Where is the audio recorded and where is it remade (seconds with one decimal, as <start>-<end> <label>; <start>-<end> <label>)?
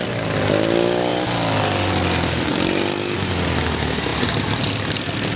0.0-5.4 recorded